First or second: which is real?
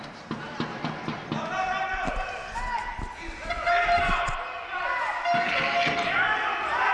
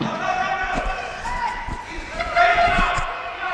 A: first